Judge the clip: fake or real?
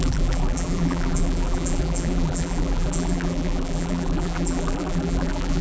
fake